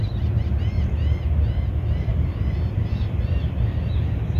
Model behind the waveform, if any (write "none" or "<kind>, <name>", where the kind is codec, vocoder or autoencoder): vocoder, BigVGAN v2